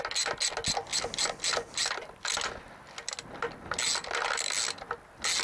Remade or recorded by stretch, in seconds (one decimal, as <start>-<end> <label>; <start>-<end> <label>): 0.0-5.4 recorded